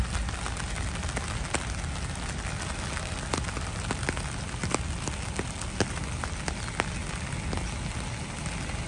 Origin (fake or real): real